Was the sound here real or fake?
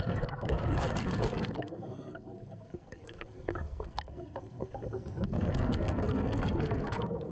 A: fake